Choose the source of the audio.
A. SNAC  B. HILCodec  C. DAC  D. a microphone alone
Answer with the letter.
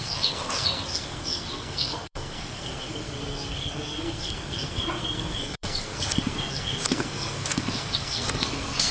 A